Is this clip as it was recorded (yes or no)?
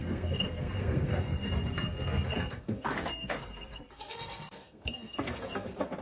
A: no